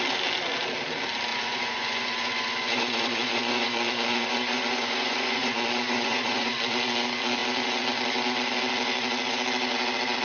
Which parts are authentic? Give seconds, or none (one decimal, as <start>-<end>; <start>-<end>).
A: 0.0-1.3; 6.5-10.2